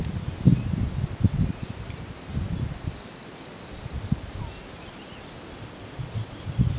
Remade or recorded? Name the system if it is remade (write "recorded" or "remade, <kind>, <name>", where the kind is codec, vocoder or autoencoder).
recorded